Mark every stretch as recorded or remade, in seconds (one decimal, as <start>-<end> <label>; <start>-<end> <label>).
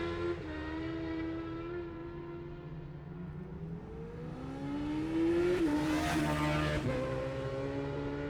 0.0-2.0 remade; 2.0-5.3 recorded; 5.3-6.2 remade; 6.2-7.1 recorded; 7.1-8.3 remade